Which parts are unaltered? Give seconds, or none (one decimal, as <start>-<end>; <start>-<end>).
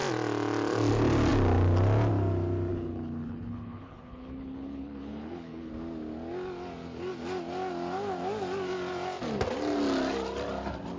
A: 0.0-2.7; 5.7-11.0